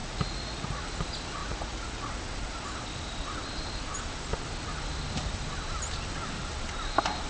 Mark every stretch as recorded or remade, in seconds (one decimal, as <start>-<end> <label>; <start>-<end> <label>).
0.0-0.8 remade; 0.8-1.4 recorded; 1.4-2.1 remade; 2.1-7.3 recorded